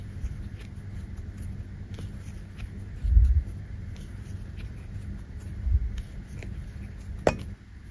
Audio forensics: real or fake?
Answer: real